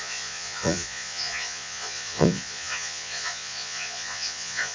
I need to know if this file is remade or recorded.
remade